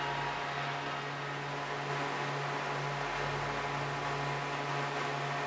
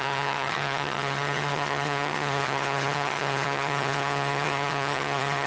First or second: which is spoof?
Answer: second